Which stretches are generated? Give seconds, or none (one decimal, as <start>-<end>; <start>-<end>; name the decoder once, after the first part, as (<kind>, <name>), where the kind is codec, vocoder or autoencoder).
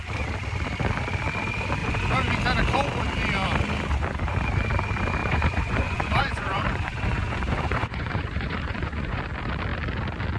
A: 1.8-2.3 (vocoder, Vocos); 5.2-9.2